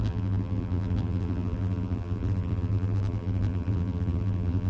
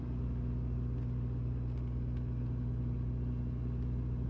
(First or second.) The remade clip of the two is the first